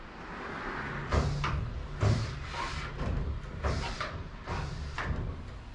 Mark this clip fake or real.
fake